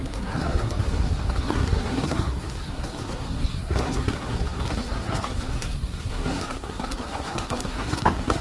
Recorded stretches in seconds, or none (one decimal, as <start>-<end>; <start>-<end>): none